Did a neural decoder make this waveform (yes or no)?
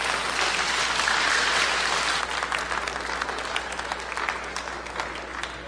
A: no